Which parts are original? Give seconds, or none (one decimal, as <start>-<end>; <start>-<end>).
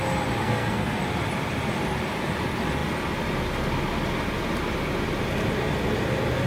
0.0-0.4; 1.0-6.5